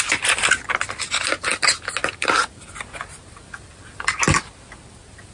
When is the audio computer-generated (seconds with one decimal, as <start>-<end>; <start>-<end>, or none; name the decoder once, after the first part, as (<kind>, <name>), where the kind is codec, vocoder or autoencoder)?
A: none